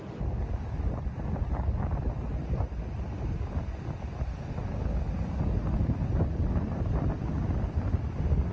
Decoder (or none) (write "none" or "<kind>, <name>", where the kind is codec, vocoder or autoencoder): none